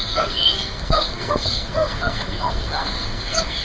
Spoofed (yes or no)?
yes